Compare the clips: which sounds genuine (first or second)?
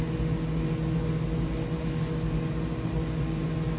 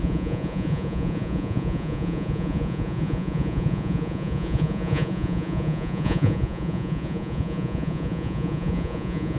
first